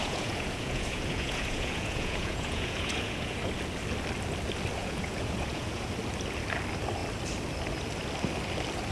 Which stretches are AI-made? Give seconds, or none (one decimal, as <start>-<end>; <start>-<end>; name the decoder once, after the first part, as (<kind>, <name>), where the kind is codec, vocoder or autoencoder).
0.0-3.4 (vocoder, Vocos); 4.8-5.9